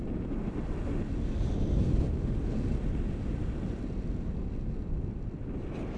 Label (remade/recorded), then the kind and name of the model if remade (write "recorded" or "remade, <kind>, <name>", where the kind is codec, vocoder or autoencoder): recorded